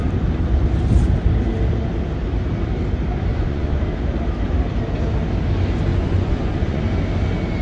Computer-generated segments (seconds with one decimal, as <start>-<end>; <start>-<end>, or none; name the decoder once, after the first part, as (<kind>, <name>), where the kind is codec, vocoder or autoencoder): 3.3-3.8 (vocoder, Vocos); 5.9-6.8